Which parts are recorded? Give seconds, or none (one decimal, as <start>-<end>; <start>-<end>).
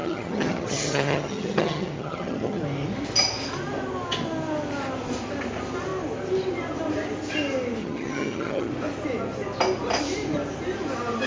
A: 2.6-7.8; 8.7-11.3